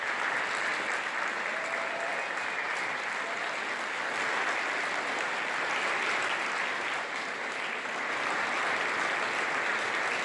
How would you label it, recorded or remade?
recorded